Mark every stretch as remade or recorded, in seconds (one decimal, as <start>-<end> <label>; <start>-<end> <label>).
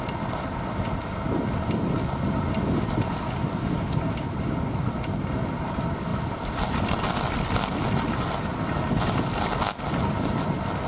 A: 0.0-10.9 recorded